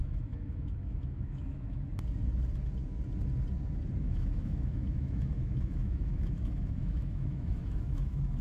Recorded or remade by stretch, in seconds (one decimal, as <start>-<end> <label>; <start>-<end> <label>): 0.0-1.9 remade; 1.9-4.0 recorded; 4.0-8.4 remade